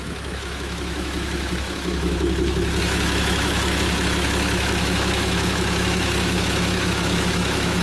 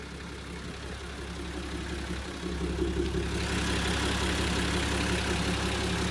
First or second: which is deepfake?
first